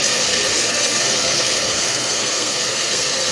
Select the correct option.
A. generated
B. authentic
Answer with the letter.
A